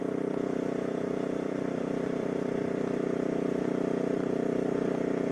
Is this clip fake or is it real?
fake